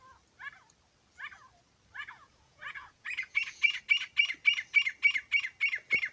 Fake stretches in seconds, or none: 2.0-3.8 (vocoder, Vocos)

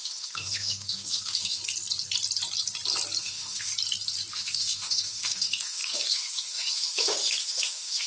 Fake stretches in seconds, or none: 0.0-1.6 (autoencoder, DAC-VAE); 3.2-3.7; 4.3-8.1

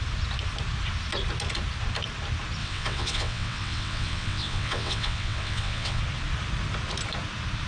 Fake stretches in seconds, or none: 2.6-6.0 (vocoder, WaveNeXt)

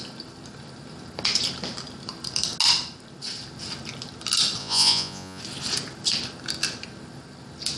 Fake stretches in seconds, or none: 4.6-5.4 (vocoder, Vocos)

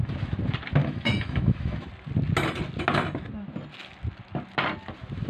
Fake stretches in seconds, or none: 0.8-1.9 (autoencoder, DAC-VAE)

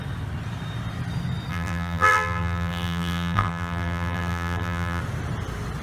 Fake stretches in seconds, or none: 1.5-5.0 (vocoder, BigVGAN v2)

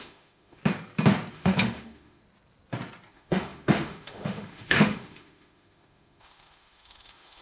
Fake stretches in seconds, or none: 0.0-0.6 (autoencoder, DAC-VAE); 1.3-2.2; 3.1-7.4